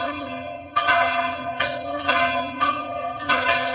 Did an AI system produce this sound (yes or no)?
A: yes